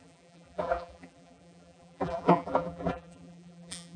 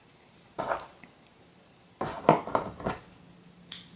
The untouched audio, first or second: second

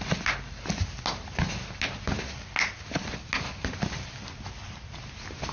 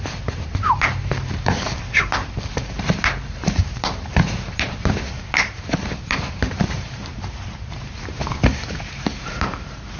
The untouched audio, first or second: first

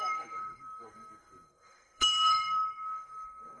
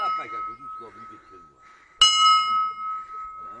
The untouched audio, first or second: second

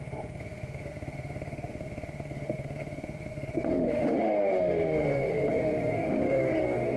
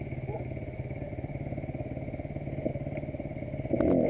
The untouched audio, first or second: second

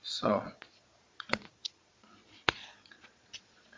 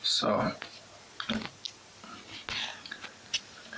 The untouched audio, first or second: second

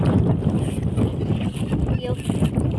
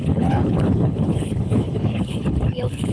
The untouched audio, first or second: first